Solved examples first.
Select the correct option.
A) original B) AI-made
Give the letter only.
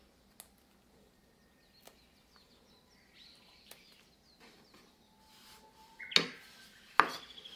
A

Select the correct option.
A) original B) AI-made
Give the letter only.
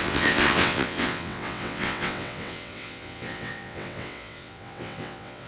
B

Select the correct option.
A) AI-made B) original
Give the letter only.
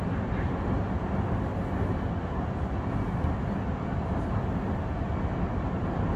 B